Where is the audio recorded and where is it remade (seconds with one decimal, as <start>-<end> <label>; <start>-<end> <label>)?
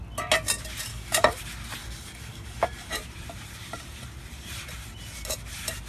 0.0-0.9 recorded; 0.9-1.4 remade; 1.4-1.8 recorded; 1.8-2.9 remade; 2.9-5.9 recorded